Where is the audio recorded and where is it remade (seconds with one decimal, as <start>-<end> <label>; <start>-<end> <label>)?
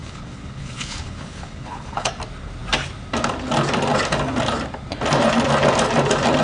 0.0-2.1 remade; 2.1-6.4 recorded